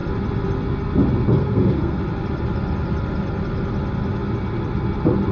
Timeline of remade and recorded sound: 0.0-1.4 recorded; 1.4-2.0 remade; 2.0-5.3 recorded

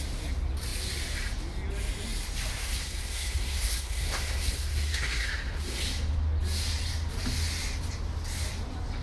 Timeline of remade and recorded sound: 0.0-2.6 recorded; 2.6-5.8 remade; 5.8-9.0 recorded

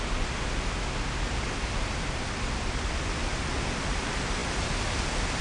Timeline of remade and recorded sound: 0.0-5.4 recorded

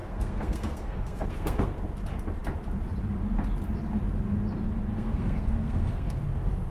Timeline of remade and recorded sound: 0.0-1.8 remade; 1.8-4.9 recorded; 4.9-6.2 remade; 6.2-6.7 recorded

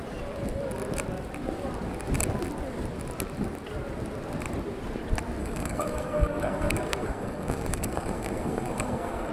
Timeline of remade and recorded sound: 0.0-5.4 recorded; 5.4-9.3 remade

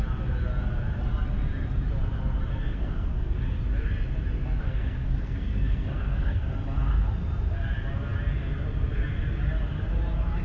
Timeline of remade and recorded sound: 0.0-2.6 recorded; 2.6-3.4 remade; 3.4-4.6 recorded; 4.6-6.5 remade; 6.5-10.4 recorded